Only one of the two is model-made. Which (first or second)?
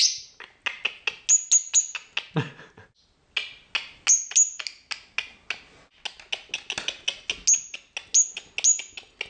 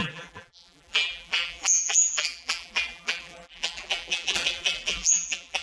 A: second